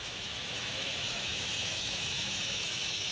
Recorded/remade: remade